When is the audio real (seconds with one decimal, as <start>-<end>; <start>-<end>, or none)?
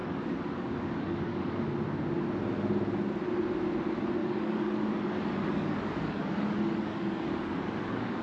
1.6-4.2